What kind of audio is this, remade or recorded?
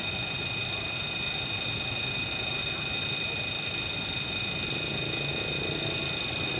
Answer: recorded